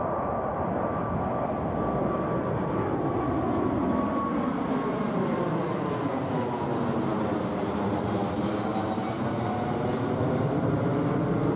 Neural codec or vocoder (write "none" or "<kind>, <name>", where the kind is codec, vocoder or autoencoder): none